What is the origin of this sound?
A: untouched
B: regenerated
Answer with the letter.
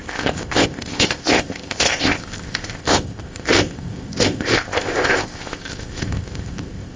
B